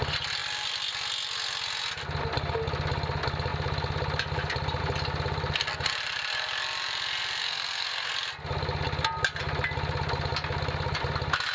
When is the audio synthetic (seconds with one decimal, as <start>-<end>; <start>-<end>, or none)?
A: 7.4-8.1